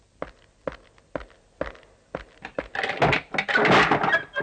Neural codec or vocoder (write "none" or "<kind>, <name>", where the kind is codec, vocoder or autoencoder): none